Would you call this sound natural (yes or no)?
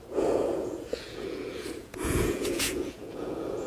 no